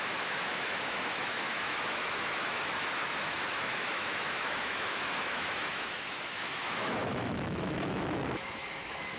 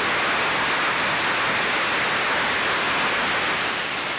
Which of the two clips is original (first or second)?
second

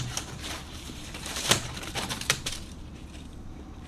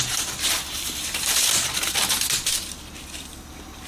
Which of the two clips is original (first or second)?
second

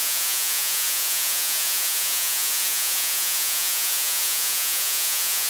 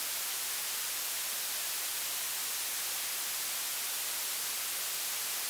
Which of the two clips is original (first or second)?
second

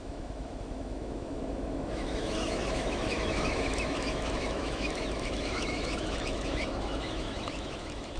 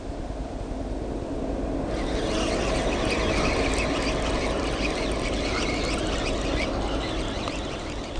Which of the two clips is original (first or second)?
second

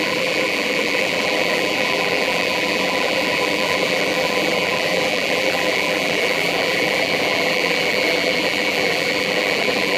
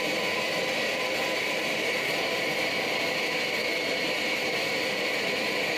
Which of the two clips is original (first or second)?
second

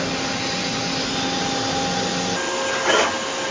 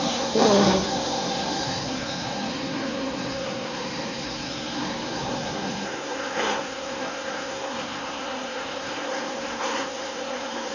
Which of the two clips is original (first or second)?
first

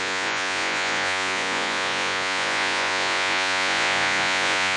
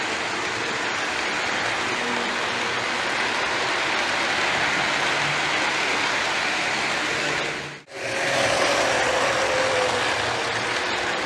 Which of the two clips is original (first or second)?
second